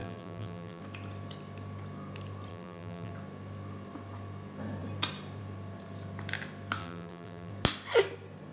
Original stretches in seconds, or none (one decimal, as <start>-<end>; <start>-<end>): 0.8-2.5; 3.1-6.8; 7.5-8.5